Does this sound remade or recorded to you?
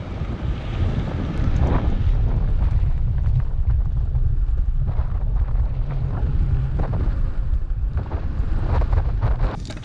remade